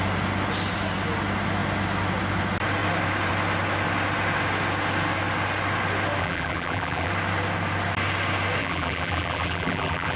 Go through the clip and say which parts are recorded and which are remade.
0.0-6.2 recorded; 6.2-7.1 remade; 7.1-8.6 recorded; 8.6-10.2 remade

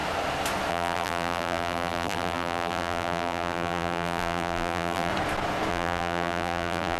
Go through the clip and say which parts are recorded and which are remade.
0.0-0.7 recorded; 0.7-5.1 remade; 5.1-5.7 recorded; 5.7-7.0 remade

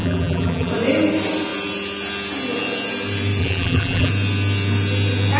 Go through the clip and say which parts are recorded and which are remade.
0.0-0.7 remade; 0.7-3.4 recorded; 3.4-4.1 remade; 4.1-5.4 recorded

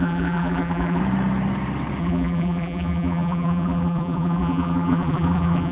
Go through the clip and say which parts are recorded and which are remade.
0.0-1.0 remade; 1.0-2.0 recorded; 2.0-5.7 remade

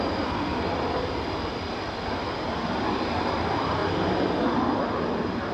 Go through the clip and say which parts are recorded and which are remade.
0.0-5.5 remade

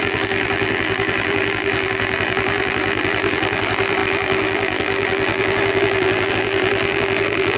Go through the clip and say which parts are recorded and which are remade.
0.0-7.6 remade

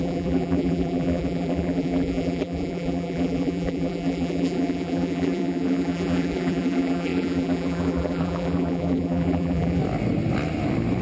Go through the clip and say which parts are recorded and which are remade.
0.0-9.8 remade; 9.8-11.0 recorded

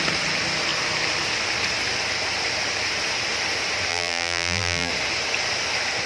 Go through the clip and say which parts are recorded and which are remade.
0.0-3.9 recorded; 3.9-4.9 remade; 4.9-6.1 recorded